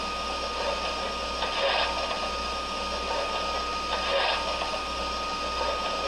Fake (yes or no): no